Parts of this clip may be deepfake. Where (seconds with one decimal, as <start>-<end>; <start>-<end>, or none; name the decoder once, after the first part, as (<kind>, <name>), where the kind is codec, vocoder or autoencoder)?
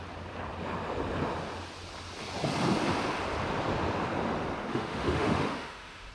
4.7-6.1 (autoencoder, DAC-VAE)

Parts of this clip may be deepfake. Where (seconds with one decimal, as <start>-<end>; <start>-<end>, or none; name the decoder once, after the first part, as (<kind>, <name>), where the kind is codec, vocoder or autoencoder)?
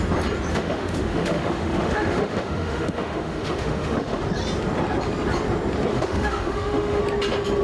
0.5-4.2 (autoencoder, DAC-VAE); 5.9-7.0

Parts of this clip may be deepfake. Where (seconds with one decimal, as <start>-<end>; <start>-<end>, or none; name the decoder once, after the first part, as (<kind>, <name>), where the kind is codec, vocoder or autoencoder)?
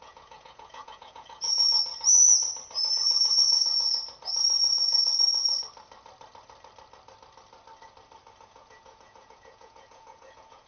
0.0-1.9 (vocoder, Vocos); 2.9-3.8; 8.4-10.7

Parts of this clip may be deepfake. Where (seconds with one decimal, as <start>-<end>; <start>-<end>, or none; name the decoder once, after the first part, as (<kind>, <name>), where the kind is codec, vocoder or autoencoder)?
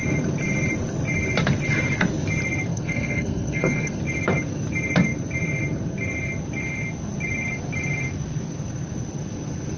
2.7-4.0 (codec, SNAC)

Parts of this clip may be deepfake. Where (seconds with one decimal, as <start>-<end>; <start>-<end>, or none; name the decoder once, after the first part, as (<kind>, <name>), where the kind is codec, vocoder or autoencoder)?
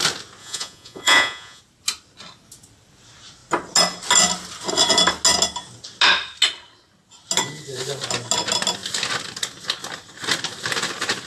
0.4-1.6 (vocoder, Vocos)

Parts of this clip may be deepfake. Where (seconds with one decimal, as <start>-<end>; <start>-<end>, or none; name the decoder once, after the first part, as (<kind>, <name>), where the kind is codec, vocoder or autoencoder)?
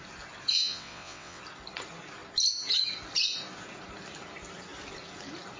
0.5-1.4 (vocoder, WaveNeXt)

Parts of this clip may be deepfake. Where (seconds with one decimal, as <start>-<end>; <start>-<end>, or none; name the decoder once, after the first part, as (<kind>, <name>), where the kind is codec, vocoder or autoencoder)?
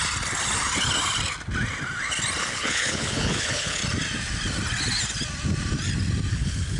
2.4-3.8 (codec, HILCodec); 6.3-6.8